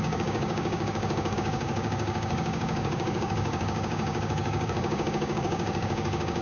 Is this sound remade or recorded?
remade